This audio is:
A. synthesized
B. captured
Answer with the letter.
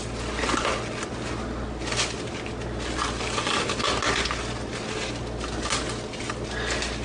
B